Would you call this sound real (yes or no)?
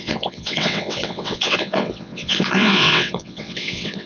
no